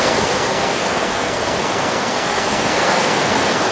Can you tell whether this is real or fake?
fake